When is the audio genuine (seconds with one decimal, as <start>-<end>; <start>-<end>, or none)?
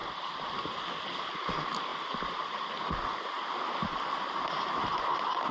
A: 0.0-5.5